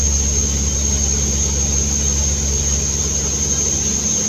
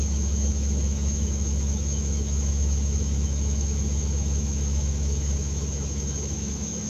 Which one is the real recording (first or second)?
first